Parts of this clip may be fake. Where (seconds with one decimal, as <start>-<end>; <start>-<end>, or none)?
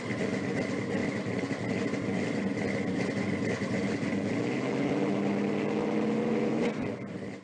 none